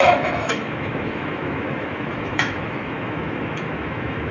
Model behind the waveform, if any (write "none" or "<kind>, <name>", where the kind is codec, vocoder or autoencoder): autoencoder, DAC-VAE